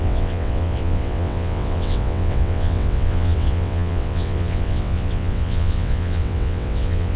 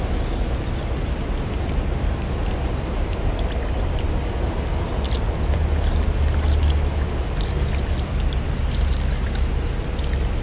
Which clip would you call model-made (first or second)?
first